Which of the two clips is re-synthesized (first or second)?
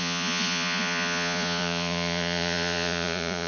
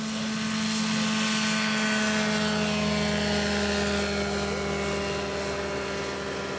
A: first